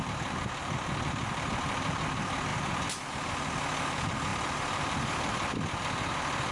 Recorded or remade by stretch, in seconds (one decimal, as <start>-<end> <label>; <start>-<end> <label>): 0.0-2.5 recorded; 2.5-3.1 remade; 3.1-6.5 recorded